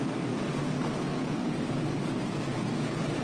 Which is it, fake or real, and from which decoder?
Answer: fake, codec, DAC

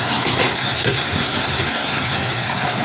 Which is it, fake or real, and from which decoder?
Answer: fake, codec, SNAC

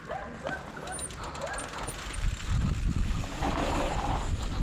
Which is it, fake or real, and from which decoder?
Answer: real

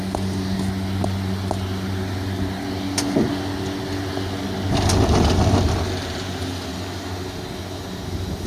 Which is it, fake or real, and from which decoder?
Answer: real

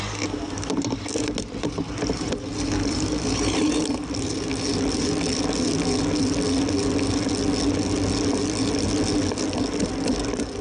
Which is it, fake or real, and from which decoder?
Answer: real